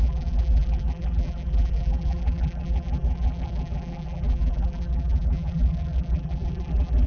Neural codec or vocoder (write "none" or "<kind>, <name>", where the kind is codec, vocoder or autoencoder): vocoder, BigVGAN v2